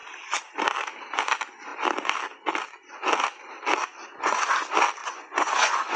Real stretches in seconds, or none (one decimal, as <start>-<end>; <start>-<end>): 0.0-3.9; 4.4-5.0